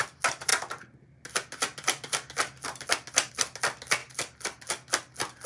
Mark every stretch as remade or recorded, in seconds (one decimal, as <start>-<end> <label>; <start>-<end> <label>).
0.0-5.5 recorded